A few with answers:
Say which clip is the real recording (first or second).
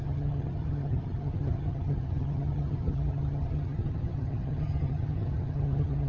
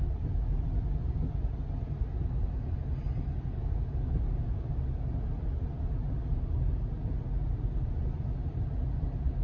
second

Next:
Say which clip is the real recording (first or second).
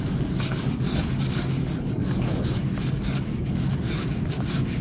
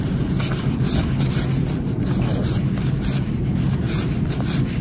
second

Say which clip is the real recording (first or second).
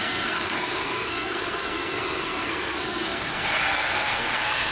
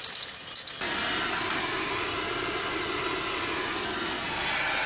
second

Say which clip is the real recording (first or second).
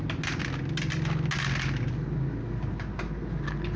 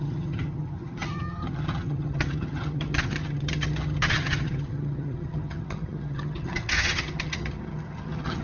first